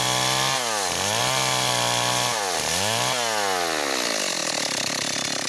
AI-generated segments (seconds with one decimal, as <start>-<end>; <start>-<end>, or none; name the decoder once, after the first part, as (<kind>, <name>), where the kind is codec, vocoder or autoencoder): none